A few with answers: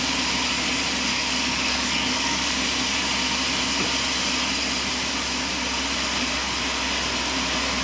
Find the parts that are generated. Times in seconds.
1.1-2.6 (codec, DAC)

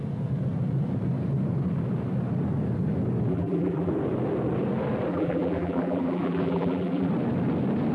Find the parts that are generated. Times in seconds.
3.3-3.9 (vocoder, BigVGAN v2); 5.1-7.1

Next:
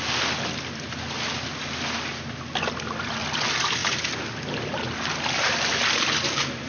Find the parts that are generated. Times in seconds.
none

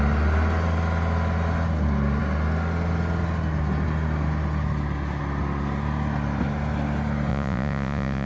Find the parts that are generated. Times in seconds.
7.3-8.3 (vocoder, Vocos)

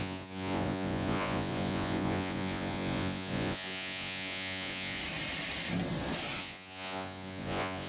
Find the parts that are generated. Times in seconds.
0.0-5.0 (vocoder, Vocos); 6.4-7.9